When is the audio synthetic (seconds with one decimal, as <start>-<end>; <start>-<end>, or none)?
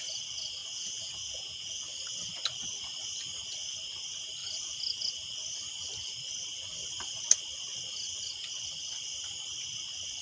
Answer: 0.6-1.8